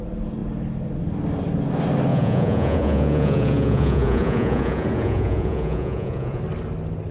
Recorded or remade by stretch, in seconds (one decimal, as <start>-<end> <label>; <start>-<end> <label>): 0.0-2.1 recorded; 2.1-6.4 remade; 6.4-7.1 recorded